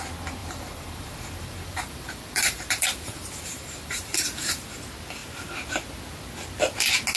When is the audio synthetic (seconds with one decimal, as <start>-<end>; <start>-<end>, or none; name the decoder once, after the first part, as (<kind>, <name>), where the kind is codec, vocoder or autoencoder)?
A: 0.4-4.7 (vocoder, BigVGAN v2)